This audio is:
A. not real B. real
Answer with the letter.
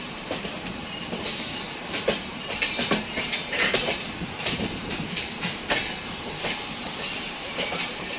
A